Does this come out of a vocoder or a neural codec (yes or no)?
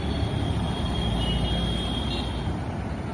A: no